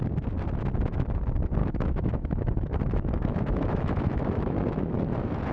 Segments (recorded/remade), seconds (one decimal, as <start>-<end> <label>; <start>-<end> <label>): 0.0-1.6 recorded; 1.6-4.9 remade; 4.9-5.5 recorded